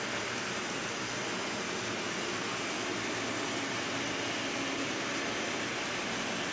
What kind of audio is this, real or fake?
real